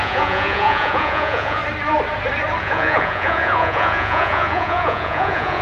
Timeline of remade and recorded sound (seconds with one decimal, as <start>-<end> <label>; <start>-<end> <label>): 0.0-1.6 remade; 1.6-2.6 recorded; 2.6-5.6 remade